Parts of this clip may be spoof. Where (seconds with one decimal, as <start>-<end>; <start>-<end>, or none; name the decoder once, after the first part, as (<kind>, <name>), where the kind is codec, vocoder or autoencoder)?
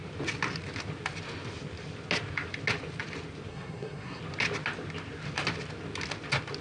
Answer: 3.5-4.2 (codec, SNAC)